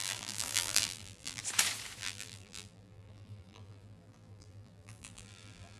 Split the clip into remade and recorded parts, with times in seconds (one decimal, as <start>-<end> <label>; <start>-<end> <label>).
0.0-1.4 remade; 1.4-2.0 recorded; 2.0-5.8 remade